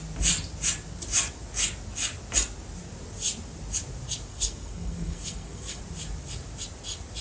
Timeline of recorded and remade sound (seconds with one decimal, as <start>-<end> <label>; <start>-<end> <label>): 0.0-4.3 recorded; 4.3-5.8 remade; 5.8-7.2 recorded